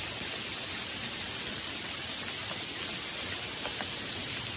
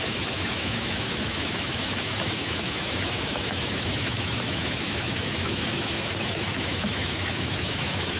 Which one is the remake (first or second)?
second